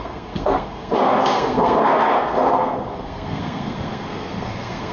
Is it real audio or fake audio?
fake